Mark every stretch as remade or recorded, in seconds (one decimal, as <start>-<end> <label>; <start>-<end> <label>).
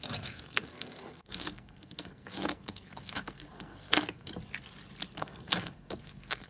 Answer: 0.0-4.3 remade; 4.3-5.2 recorded; 5.2-6.5 remade